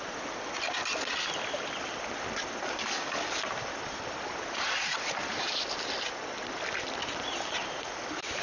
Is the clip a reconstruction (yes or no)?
no